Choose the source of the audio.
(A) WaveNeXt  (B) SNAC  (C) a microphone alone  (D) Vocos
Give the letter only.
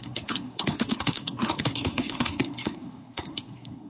B